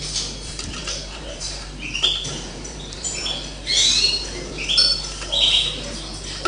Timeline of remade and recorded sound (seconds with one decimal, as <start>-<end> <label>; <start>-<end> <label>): 0.0-0.8 recorded; 0.8-3.2 remade; 3.2-6.5 recorded